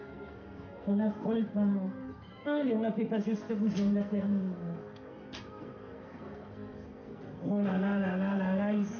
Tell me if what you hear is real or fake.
fake